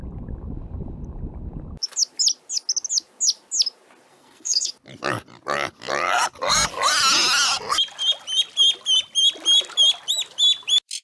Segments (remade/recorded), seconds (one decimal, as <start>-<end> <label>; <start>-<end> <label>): 0.0-4.1 recorded; 4.1-4.7 remade; 4.7-11.0 recorded